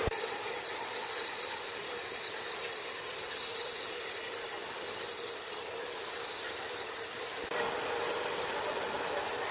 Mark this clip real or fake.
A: real